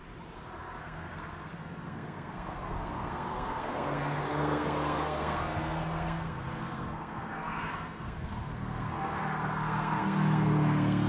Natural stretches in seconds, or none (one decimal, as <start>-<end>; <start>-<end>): 0.0-0.8